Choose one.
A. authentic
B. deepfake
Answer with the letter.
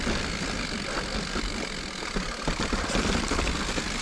A